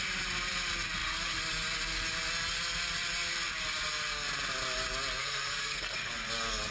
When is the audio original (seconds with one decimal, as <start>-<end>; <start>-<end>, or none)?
0.0-5.2; 6.1-6.7